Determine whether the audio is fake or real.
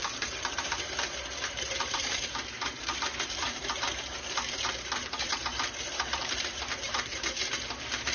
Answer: fake